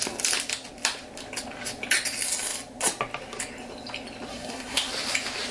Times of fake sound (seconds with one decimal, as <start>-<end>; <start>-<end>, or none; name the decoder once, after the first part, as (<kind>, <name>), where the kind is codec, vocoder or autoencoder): 4.3-4.9 (codec, SNAC)